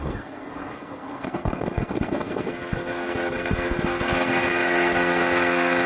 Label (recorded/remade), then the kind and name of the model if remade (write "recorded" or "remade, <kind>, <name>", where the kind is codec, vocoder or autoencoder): remade, codec, SNAC